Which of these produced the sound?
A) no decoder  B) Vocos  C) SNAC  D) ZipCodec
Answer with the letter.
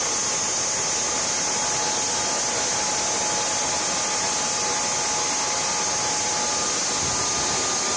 A